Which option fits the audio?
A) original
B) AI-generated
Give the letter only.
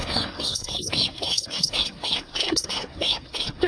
B